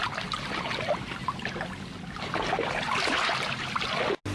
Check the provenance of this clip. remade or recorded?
recorded